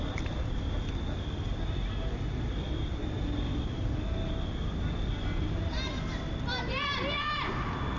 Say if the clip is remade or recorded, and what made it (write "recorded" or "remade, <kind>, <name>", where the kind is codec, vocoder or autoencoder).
recorded